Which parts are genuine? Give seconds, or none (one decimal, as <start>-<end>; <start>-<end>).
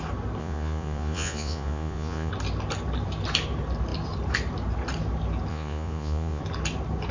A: 0.0-0.4; 2.3-5.5; 6.4-7.1